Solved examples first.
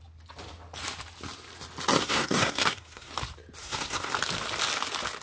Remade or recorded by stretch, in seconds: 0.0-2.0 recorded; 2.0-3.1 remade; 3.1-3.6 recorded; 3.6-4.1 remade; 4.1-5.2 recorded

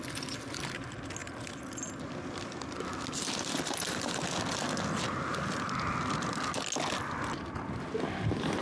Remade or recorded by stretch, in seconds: 0.0-8.6 recorded

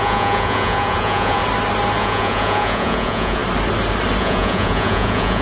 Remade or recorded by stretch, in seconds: 0.0-1.4 remade; 1.4-2.0 recorded; 2.0-3.4 remade; 3.4-4.2 recorded; 4.2-5.4 remade

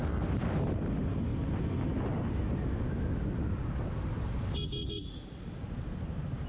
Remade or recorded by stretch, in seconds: 0.0-6.5 recorded

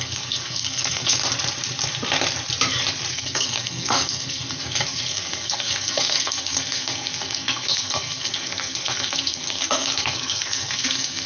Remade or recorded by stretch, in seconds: 0.0-1.2 remade; 1.2-3.1 recorded; 3.1-11.3 remade

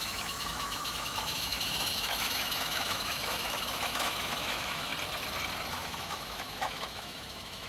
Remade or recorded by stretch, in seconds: 0.0-4.9 remade; 4.9-5.7 recorded; 5.7-7.7 remade

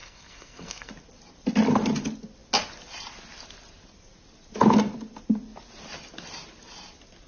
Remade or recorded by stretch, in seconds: 0.0-0.9 remade; 0.9-7.3 recorded

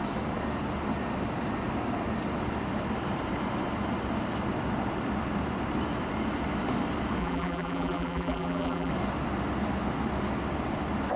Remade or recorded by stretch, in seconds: 0.0-7.2 recorded; 7.2-8.9 remade; 8.9-11.2 recorded